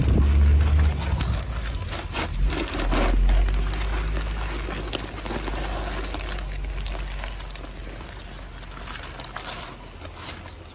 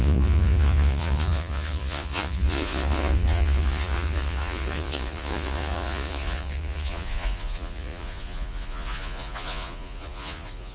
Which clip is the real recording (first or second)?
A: first